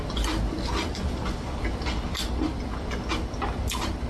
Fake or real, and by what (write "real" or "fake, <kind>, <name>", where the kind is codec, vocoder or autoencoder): real